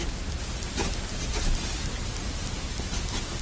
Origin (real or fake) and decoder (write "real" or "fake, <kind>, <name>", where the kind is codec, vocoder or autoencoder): real